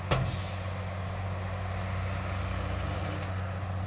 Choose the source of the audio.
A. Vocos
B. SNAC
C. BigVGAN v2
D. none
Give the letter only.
D